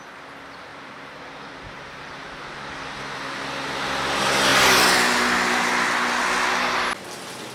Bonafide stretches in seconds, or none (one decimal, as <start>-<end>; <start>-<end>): 0.0-0.7; 3.4-7.5